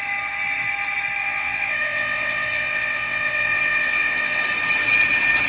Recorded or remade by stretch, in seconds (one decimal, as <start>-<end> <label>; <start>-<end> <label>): 0.0-1.2 recorded; 1.2-4.4 remade; 4.4-5.5 recorded